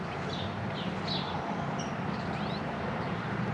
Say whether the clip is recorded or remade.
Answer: remade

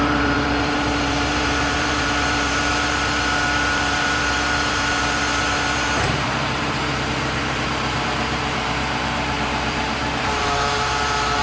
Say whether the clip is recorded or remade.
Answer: remade